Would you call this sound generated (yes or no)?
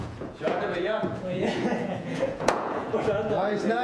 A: yes